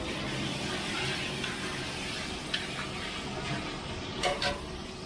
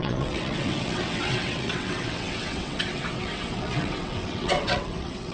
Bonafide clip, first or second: first